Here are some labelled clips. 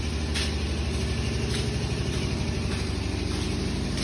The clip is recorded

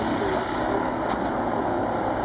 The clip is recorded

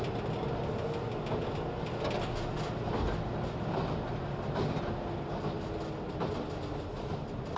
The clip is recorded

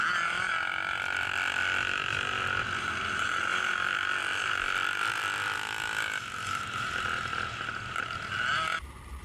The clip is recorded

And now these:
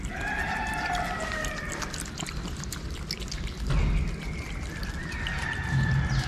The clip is recorded